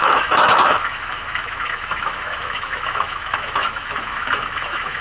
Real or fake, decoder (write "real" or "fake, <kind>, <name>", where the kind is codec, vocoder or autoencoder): fake, autoencoder, DAC-VAE